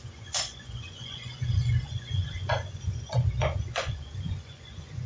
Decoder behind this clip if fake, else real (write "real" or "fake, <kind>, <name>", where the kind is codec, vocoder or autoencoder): fake, vocoder, Vocos